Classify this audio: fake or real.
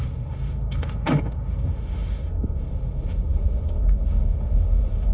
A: fake